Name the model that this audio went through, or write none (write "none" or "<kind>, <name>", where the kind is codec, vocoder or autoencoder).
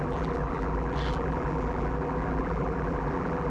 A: vocoder, BigVGAN v2